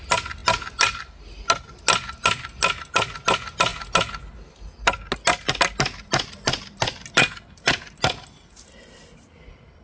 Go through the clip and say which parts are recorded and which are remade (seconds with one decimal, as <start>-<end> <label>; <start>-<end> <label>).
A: 0.0-9.8 recorded